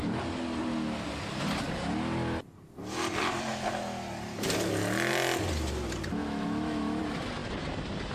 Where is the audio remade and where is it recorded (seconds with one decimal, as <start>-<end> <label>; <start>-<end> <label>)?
0.0-6.2 recorded; 6.2-7.0 remade; 7.0-8.1 recorded